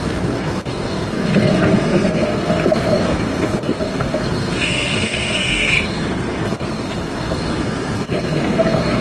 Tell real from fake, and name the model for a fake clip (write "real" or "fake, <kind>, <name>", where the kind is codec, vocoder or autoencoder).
fake, codec, SNAC